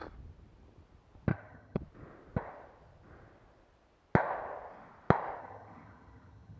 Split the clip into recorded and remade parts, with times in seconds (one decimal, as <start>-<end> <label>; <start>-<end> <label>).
0.0-1.3 recorded; 1.3-1.8 remade; 1.8-5.4 recorded; 5.4-6.6 remade